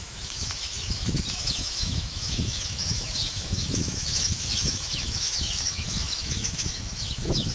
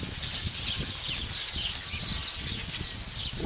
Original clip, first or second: second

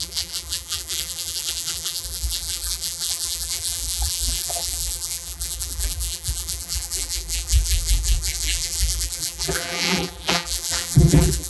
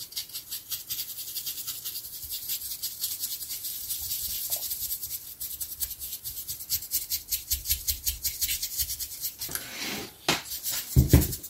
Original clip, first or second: second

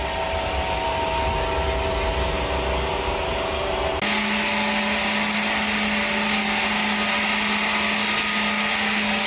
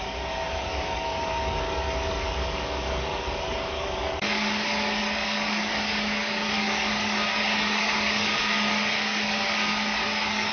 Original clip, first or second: first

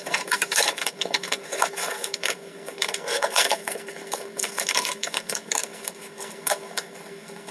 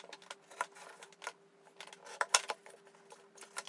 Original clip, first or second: second